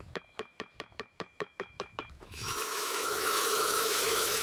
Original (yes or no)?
no